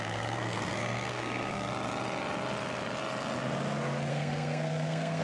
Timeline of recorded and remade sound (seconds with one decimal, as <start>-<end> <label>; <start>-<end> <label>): 0.0-1.7 remade; 1.7-4.1 recorded; 4.1-5.2 remade